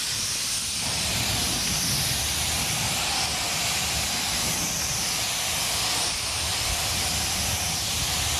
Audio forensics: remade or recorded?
recorded